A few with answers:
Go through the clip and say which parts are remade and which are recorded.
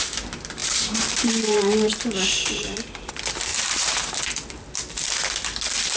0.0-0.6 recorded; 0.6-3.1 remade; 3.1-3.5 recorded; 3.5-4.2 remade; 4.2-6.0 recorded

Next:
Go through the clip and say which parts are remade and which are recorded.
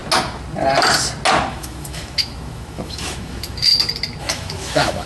0.0-1.5 recorded; 1.5-3.7 remade; 3.7-4.2 recorded; 4.2-5.1 remade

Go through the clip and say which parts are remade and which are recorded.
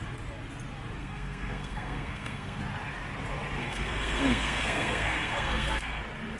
0.0-1.0 recorded; 1.0-2.6 remade; 2.6-3.6 recorded; 3.6-6.0 remade; 6.0-6.4 recorded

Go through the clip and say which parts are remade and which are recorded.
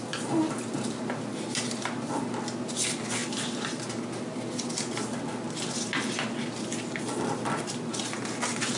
0.0-8.8 recorded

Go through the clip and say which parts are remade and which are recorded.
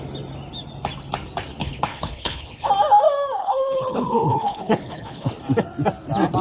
0.0-1.6 recorded; 1.6-2.7 remade; 2.7-3.4 recorded; 3.4-5.3 remade; 5.3-6.4 recorded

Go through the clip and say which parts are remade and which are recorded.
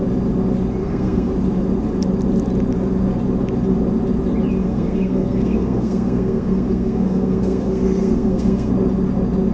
0.0-0.8 recorded; 0.8-1.3 remade; 1.3-4.6 recorded; 4.6-8.7 remade; 8.7-9.5 recorded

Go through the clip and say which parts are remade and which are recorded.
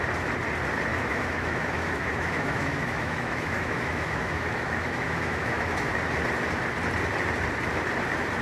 0.0-0.9 recorded; 0.9-5.9 remade; 5.9-8.4 recorded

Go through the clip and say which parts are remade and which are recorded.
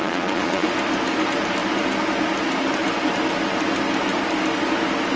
0.0-0.7 remade; 0.7-5.2 recorded